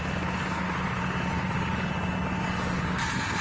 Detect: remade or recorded recorded